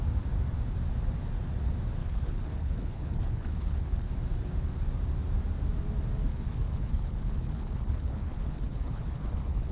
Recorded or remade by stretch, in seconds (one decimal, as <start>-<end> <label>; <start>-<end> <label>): 0.0-2.0 recorded; 2.0-4.1 remade; 4.1-6.3 recorded; 6.3-9.7 remade